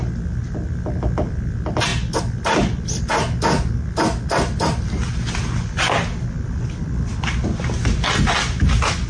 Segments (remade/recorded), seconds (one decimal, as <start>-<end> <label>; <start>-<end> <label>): 0.0-9.1 recorded